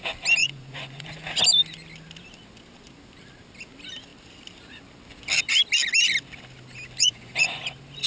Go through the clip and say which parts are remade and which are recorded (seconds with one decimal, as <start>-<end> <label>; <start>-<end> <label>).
0.0-0.4 recorded; 0.4-1.1 remade; 1.1-7.0 recorded; 7.0-7.6 remade; 7.6-8.1 recorded